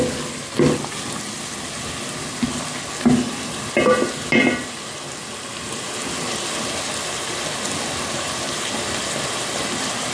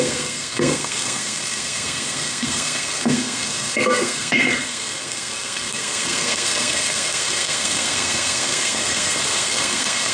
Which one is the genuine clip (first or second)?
first